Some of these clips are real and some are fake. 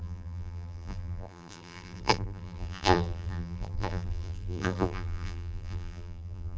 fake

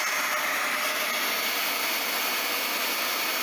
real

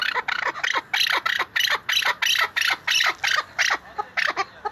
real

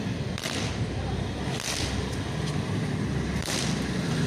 fake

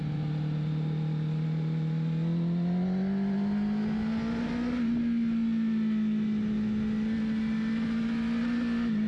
real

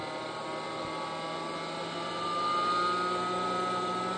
real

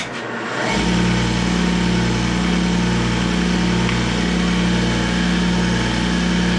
real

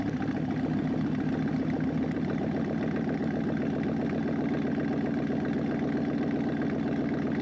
real